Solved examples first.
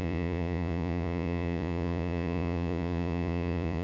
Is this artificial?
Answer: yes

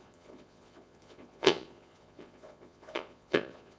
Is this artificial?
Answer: yes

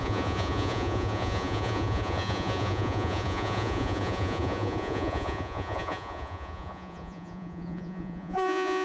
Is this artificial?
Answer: yes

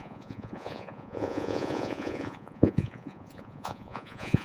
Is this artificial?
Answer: yes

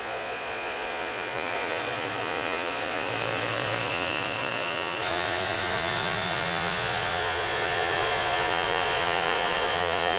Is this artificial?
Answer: yes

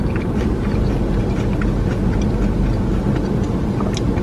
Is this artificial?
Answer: no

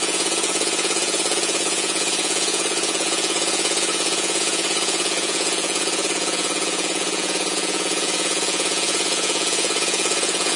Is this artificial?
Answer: yes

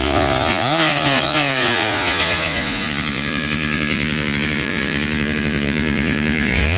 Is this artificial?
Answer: yes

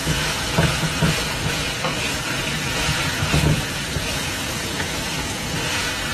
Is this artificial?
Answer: yes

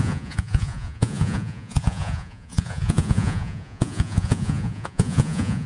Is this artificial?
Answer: yes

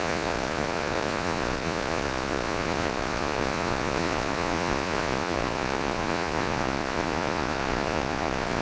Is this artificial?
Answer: yes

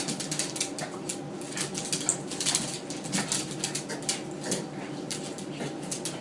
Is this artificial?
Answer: no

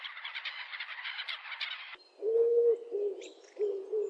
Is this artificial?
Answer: no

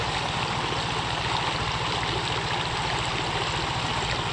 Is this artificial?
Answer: no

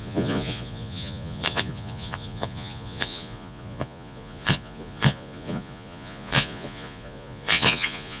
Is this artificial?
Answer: yes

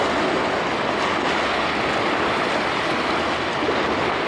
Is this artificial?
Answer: no